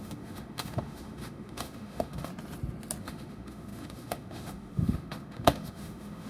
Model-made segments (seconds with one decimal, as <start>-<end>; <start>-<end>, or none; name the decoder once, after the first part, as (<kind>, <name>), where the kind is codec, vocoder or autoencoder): 0.0-2.3 (autoencoder, DAC-VAE); 3.0-6.3